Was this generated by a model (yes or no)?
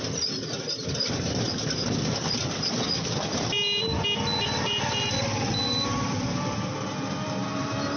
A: no